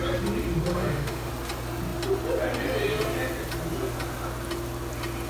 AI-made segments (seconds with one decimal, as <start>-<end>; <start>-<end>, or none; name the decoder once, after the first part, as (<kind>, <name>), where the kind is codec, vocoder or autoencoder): 0.7-1.3 (autoencoder, DAC-VAE)